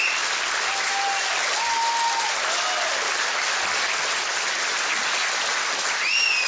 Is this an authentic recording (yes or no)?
yes